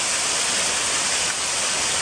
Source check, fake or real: real